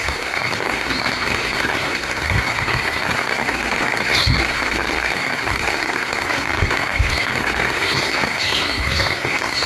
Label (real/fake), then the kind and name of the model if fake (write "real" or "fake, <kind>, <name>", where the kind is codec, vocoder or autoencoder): fake, codec, SNAC